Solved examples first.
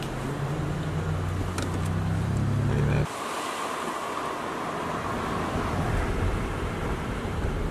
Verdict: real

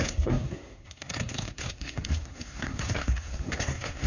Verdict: fake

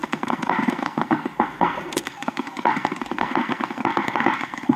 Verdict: fake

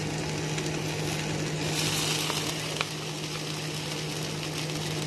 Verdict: real